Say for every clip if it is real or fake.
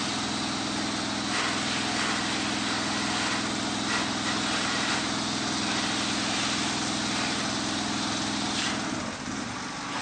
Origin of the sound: real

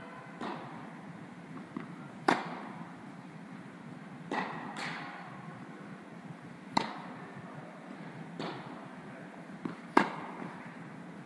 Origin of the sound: real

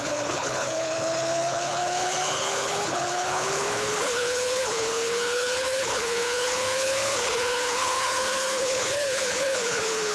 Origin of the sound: fake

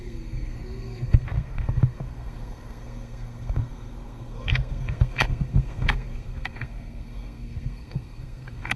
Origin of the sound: fake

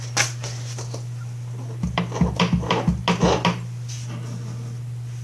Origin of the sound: real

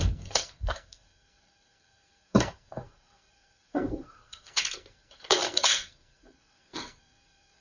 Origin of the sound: fake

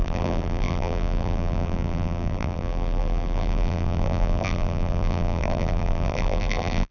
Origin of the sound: fake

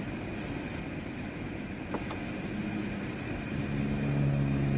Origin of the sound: real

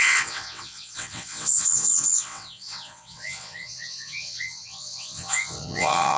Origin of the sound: fake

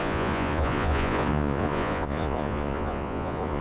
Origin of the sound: fake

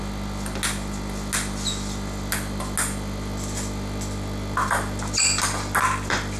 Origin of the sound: real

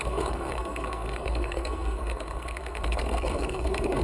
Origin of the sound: fake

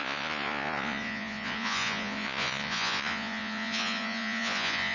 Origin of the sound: fake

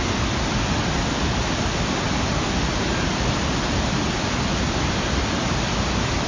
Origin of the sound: real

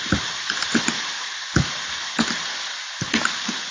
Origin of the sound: real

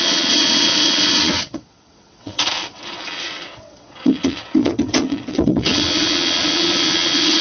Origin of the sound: fake